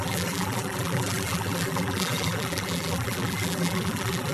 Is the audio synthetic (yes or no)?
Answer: yes